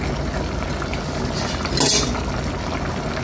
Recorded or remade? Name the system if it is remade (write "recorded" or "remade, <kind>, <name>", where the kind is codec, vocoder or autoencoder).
recorded